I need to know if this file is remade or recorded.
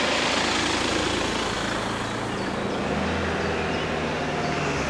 recorded